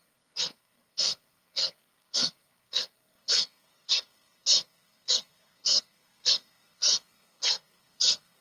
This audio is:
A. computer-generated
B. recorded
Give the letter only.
A